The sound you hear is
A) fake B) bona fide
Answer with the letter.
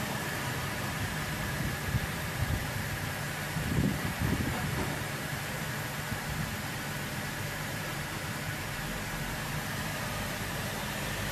A